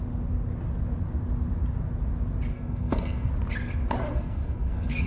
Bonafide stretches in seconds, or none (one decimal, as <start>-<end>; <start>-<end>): 0.0-2.5; 3.3-4.1